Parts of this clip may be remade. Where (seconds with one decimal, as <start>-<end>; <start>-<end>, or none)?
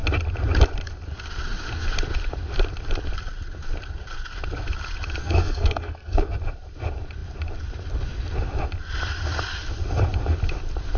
5.2-6.4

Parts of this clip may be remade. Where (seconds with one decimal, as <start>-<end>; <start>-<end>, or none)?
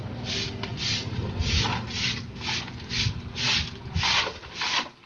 none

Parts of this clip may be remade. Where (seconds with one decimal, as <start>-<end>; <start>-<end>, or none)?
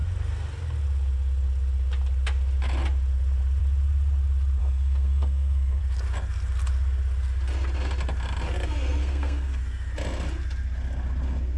4.6-5.8; 9.0-9.6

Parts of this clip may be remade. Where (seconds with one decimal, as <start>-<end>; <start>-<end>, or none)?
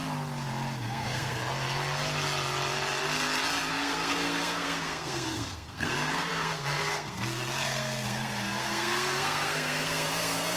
0.8-1.4; 3.7-10.6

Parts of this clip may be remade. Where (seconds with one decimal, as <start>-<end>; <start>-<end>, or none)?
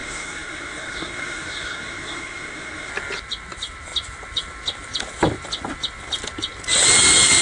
0.0-2.9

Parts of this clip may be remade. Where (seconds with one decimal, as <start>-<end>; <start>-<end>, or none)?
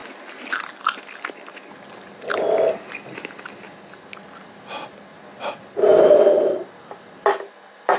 none